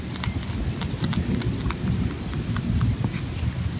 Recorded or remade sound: recorded